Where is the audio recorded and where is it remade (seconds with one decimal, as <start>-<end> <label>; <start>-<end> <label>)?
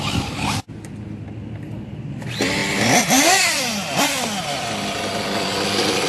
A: 0.0-6.1 recorded